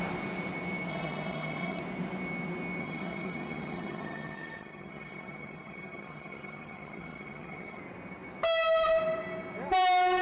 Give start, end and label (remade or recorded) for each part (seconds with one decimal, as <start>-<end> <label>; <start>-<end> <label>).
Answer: 0.0-0.9 recorded; 0.9-1.8 remade; 1.8-2.8 recorded; 2.8-7.8 remade; 7.8-10.2 recorded